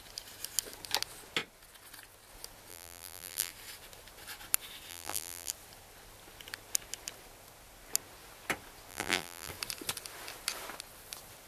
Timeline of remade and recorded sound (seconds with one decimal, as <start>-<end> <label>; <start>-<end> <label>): 0.0-2.7 recorded; 2.7-3.5 remade; 3.5-4.9 recorded; 4.9-5.5 remade; 5.5-8.9 recorded; 8.9-9.5 remade; 9.5-11.5 recorded